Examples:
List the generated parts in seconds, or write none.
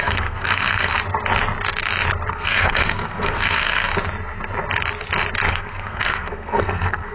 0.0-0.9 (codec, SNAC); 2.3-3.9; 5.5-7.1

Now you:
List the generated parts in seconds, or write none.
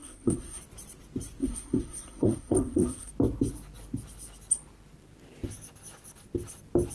0.0-0.6 (codec, SNAC); 1.4-3.1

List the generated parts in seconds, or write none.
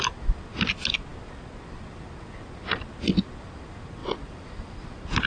4.0-5.3 (vocoder, BigVGAN v2)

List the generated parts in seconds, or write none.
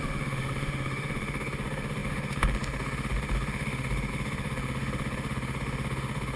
0.0-6.4 (autoencoder, DAC-VAE)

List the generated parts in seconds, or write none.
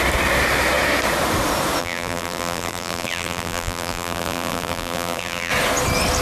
1.8-5.5 (vocoder, BigVGAN v2)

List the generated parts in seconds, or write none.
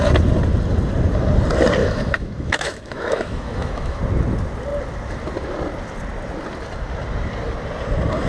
1.8-4.0 (autoencoder, DAC-VAE)